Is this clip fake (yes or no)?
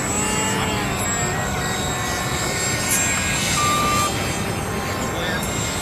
no